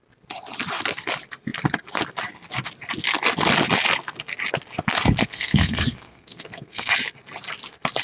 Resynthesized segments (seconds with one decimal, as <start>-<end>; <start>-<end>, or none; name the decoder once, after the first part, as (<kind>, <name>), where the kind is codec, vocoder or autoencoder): 5.2-6.9 (codec, SNAC)